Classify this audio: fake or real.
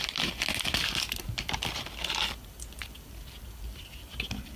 real